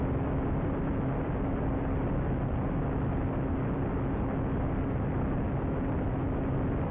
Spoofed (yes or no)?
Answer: no